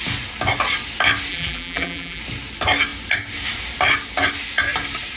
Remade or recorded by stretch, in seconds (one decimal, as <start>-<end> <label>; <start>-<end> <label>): 0.0-1.3 recorded; 1.3-2.2 remade; 2.2-5.2 recorded